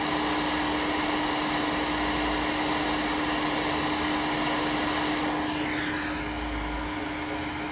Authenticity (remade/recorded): recorded